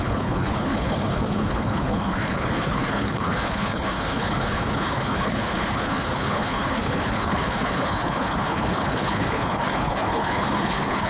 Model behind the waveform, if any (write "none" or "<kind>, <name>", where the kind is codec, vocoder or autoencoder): codec, HILCodec